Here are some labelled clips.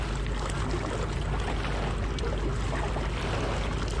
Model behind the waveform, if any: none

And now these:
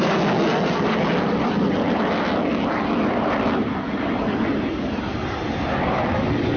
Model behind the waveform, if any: none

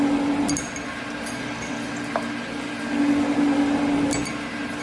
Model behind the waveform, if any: none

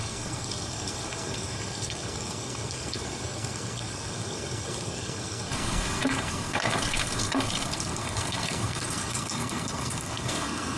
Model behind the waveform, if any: codec, SNAC